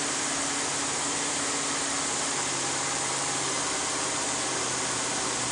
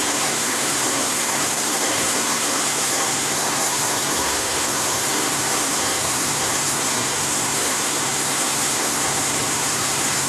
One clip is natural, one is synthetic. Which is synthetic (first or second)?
second